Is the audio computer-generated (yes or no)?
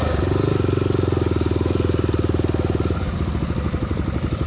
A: no